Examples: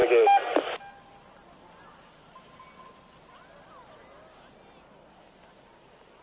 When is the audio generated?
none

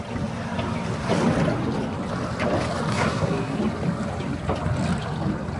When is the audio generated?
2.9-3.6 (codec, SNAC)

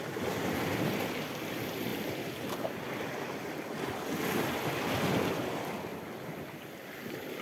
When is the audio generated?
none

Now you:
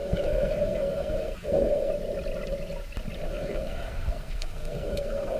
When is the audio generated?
0.0-1.9 (codec, SNAC); 3.3-5.4

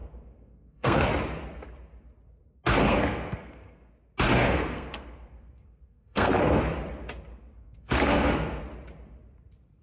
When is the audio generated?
0.0-1.1 (codec, SNAC); 2.8-3.9; 4.3-6.6; 7.3-8.6

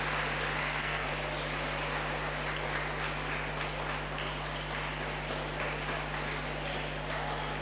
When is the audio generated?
0.6-1.1 (codec, SNAC)